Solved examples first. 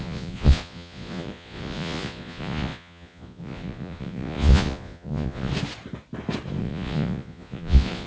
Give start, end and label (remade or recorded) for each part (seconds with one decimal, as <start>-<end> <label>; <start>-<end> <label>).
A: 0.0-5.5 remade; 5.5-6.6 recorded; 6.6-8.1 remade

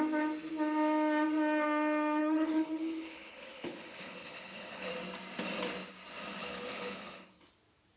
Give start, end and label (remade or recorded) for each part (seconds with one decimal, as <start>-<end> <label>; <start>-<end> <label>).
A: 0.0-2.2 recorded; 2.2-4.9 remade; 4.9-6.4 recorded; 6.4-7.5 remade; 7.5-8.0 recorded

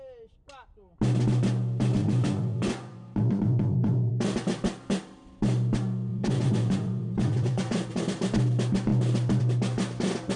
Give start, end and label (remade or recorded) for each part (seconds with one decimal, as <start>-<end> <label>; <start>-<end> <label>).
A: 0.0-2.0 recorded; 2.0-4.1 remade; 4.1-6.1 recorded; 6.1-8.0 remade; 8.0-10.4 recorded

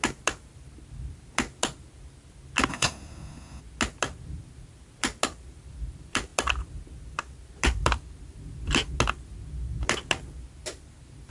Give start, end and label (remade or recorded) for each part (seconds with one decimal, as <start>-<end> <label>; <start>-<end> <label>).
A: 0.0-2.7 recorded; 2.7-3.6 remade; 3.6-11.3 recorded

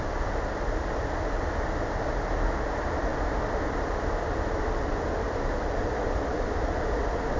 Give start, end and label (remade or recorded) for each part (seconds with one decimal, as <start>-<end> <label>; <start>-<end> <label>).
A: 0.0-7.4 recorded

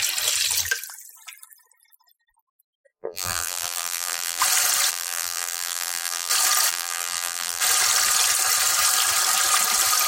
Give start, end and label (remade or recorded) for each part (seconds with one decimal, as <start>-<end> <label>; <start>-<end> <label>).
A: 0.0-2.9 recorded; 2.9-4.4 remade; 4.4-4.9 recorded; 4.9-6.3 remade; 6.3-6.7 recorded; 6.7-7.6 remade; 7.6-10.1 recorded

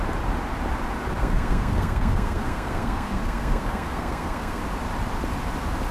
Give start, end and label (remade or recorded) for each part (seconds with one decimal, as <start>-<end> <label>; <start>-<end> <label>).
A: 0.0-1.2 recorded; 1.2-4.6 remade; 4.6-5.9 recorded